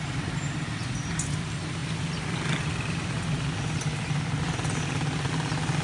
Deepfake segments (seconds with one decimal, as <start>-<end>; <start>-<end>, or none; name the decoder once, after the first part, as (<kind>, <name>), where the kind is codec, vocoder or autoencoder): none